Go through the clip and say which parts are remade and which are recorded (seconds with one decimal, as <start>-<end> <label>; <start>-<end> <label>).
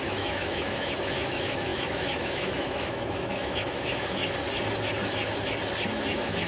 0.0-4.2 remade; 4.2-5.9 recorded; 5.9-6.5 remade